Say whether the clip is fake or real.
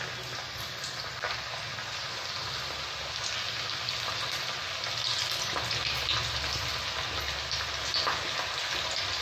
real